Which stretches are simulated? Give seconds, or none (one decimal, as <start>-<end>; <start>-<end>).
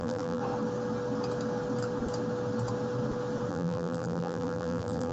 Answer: 0.0-0.4; 3.5-5.1